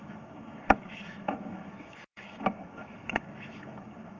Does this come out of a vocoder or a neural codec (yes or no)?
yes